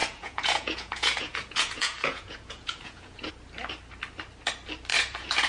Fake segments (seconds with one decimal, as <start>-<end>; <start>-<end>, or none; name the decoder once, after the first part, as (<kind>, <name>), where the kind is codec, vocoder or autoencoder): 0.0-3.3 (vocoder, Vocos); 4.9-5.5